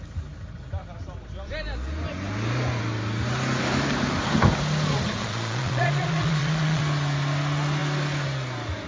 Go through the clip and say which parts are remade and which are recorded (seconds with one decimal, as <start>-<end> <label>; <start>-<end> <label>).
0.0-5.2 recorded; 5.2-6.8 remade; 6.8-8.9 recorded